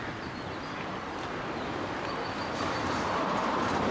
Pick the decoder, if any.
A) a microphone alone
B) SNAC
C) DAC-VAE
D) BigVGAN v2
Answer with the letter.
D